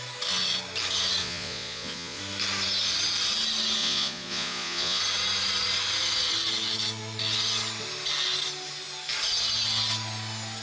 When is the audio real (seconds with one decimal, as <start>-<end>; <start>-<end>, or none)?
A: 0.0-1.2; 2.2-3.8; 5.0-10.6